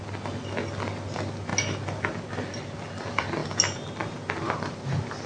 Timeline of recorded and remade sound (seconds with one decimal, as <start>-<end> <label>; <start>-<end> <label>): 0.0-5.3 recorded

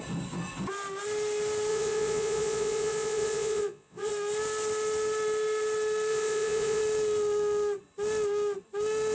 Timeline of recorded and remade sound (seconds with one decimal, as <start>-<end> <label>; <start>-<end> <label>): 0.0-1.7 recorded; 1.7-4.1 remade; 4.1-6.1 recorded; 6.1-6.8 remade; 6.8-9.1 recorded

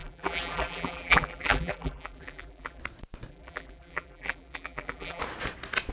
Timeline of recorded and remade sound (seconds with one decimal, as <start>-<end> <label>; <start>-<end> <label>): 0.0-2.8 remade; 2.8-3.3 recorded; 3.3-5.2 remade; 5.2-5.9 recorded

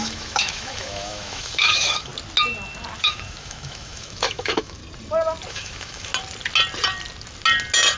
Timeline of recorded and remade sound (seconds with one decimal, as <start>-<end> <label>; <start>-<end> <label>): 0.0-2.1 remade; 2.1-3.0 recorded; 3.0-4.8 remade; 4.8-5.5 recorded; 5.5-6.1 remade; 6.1-8.0 recorded